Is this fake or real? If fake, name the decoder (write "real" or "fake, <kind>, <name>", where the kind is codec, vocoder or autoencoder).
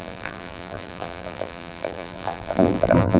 fake, vocoder, BigVGAN v2